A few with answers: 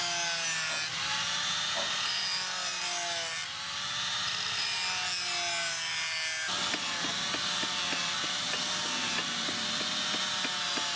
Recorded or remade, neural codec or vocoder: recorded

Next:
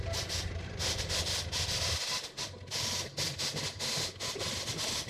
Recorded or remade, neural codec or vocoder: recorded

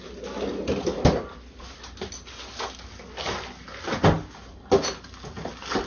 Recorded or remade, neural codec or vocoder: recorded